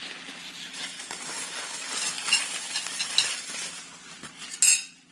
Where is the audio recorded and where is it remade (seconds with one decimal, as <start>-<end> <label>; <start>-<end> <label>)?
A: 0.0-0.7 recorded; 0.7-3.8 remade; 3.8-5.1 recorded